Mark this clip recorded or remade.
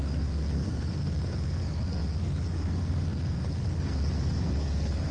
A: remade